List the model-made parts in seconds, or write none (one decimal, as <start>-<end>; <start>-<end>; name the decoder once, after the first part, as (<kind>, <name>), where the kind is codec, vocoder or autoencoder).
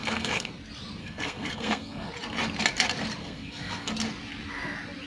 0.0-0.5 (codec, SNAC); 1.0-2.1; 3.2-3.9